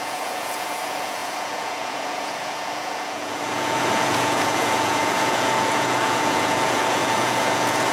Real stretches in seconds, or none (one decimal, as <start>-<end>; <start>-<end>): none